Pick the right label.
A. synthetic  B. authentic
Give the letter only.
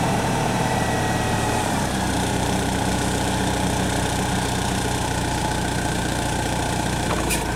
A